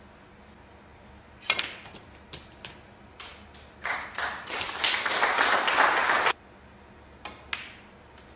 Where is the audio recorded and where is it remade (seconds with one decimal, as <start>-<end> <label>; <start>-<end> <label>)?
0.0-8.4 recorded